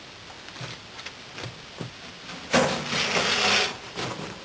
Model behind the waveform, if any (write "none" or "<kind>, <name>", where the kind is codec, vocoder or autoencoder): none